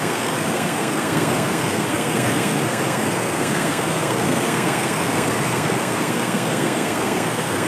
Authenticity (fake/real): fake